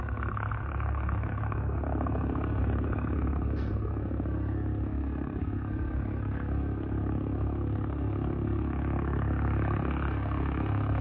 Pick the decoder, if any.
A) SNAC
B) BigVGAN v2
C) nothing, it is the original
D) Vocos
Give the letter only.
A